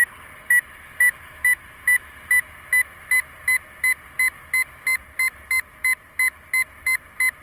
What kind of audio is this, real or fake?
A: real